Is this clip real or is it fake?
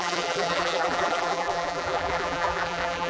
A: fake